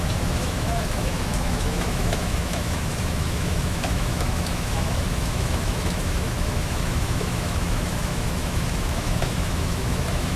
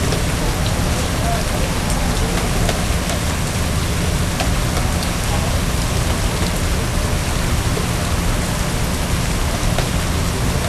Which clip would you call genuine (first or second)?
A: second